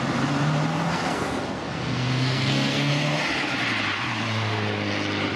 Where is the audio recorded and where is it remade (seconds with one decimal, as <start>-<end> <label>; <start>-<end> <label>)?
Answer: 0.0-0.9 recorded; 0.9-2.9 remade; 2.9-5.4 recorded